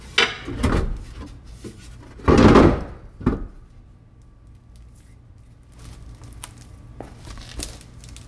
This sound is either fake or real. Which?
real